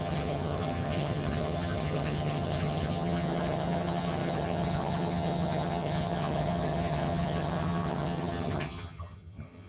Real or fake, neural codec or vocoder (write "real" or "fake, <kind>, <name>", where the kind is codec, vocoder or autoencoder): fake, vocoder, HiFi-GAN